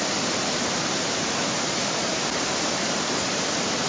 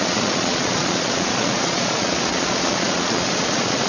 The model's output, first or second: second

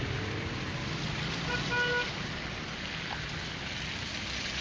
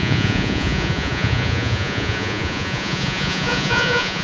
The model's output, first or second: second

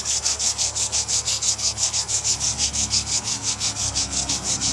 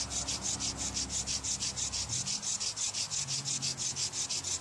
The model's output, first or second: first